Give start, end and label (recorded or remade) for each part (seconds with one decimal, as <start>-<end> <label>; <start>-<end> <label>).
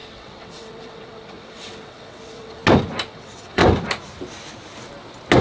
0.0-2.6 remade; 2.6-3.1 recorded; 3.1-3.6 remade; 3.6-5.4 recorded